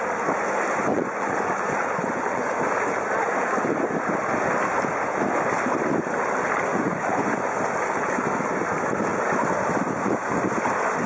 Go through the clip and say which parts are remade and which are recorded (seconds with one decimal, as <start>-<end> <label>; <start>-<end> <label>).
0.0-0.9 recorded; 0.9-2.5 remade; 2.5-6.7 recorded; 6.7-7.6 remade; 7.6-11.1 recorded